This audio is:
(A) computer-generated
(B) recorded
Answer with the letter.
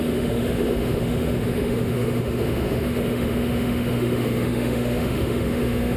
A